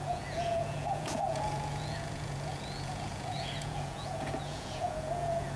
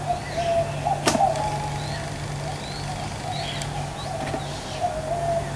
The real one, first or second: second